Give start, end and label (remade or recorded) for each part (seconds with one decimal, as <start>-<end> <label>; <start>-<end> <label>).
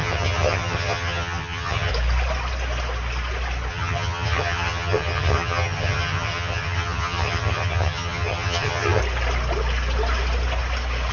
0.0-1.9 remade; 1.9-3.7 recorded; 3.7-9.0 remade; 9.0-11.1 recorded